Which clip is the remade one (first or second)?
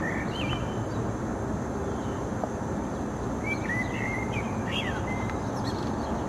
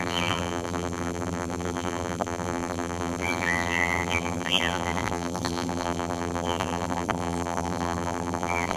second